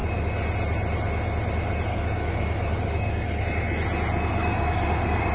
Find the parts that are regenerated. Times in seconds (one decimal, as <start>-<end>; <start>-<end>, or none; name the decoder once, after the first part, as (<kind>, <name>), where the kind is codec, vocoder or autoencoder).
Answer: 1.9-3.4 (codec, DAC); 4.4-5.3